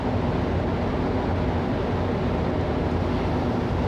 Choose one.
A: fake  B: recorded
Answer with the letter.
B